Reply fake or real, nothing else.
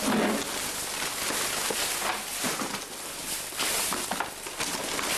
real